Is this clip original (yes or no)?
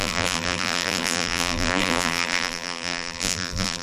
no